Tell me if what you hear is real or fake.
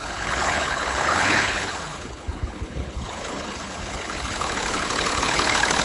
fake